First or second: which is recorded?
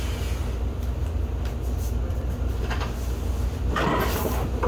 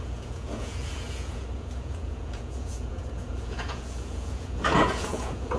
first